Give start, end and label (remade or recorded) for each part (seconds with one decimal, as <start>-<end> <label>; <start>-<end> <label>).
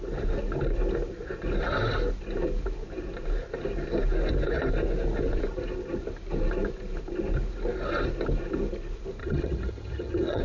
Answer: 0.0-9.2 recorded; 9.2-10.4 remade